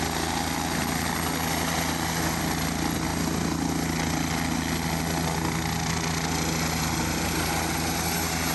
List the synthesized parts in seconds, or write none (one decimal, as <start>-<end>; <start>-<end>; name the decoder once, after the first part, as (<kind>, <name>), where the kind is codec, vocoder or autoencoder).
none